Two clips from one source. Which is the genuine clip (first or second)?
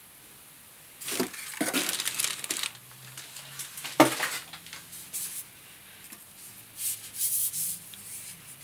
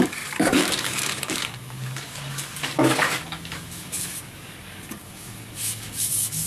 first